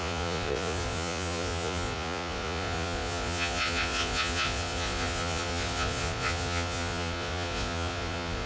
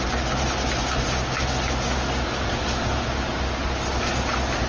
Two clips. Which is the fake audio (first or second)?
first